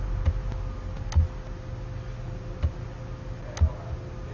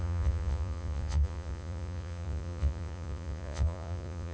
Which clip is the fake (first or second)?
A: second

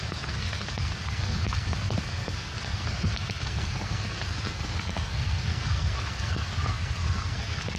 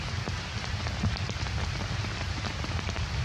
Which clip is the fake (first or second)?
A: first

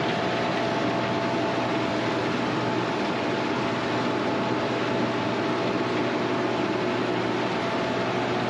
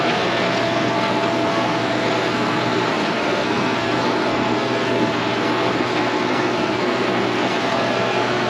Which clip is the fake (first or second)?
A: second